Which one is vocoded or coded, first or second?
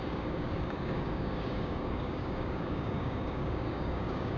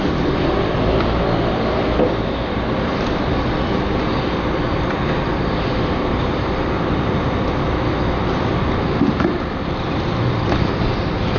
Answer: first